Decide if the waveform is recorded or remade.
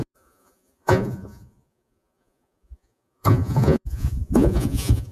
remade